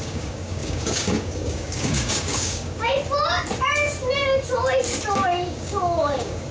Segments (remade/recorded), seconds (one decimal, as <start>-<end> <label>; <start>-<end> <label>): 0.0-2.9 remade; 2.9-5.1 recorded; 5.1-6.5 remade